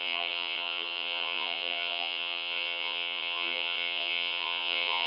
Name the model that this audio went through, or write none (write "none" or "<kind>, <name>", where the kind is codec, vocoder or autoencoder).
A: vocoder, WaveNeXt